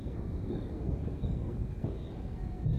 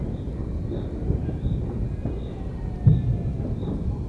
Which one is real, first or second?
second